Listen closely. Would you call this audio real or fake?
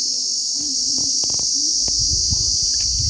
real